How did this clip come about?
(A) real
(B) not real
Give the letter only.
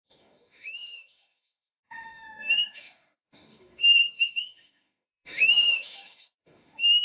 B